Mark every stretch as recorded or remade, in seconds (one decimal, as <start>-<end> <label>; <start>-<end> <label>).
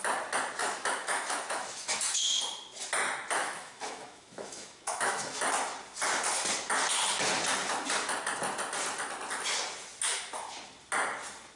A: 0.0-0.6 recorded; 0.6-2.4 remade; 2.4-3.4 recorded; 3.4-5.4 remade; 5.4-11.6 recorded